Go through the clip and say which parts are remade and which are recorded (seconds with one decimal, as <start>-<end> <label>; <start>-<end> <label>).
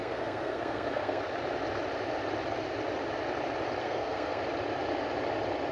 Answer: 0.0-1.2 remade; 1.2-3.8 recorded; 3.8-4.4 remade; 4.4-5.7 recorded